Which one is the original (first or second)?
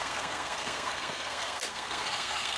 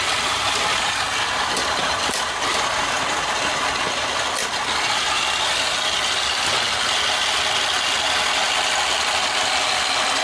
second